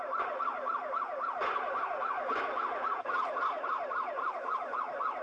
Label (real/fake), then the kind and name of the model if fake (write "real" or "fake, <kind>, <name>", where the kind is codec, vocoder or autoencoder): real